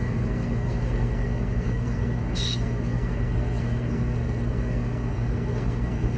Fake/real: fake